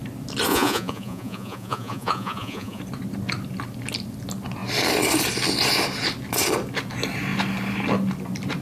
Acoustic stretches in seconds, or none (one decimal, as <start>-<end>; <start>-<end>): 0.0-0.5; 2.8-8.6